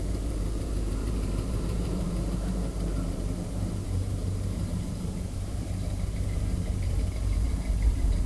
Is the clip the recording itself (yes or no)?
no